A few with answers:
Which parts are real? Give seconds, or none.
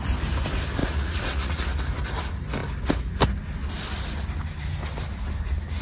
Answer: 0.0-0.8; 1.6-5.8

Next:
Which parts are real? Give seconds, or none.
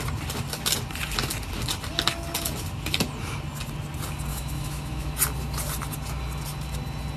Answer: 0.0-4.3; 5.1-7.2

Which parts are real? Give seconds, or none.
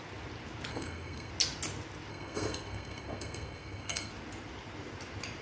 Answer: 0.0-0.7; 1.3-2.1; 4.1-5.4